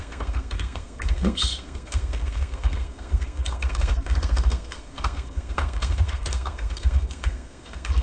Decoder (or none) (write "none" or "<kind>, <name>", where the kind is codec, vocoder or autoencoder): codec, SNAC